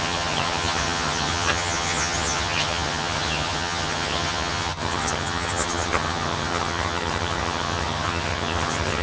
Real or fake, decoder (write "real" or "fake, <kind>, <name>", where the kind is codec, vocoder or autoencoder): fake, vocoder, HiFi-GAN